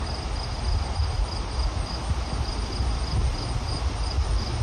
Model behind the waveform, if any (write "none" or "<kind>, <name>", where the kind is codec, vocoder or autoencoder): none